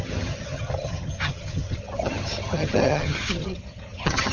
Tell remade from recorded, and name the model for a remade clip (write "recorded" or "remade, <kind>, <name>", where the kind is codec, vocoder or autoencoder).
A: remade, vocoder, HiFi-GAN